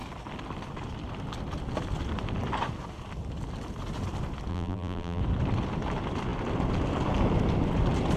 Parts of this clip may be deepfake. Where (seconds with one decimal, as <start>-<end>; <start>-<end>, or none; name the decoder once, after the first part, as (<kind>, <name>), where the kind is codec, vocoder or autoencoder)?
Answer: 4.5-5.2 (vocoder, BigVGAN v2)